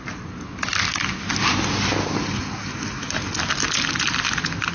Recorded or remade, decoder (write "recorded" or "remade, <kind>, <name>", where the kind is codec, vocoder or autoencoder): recorded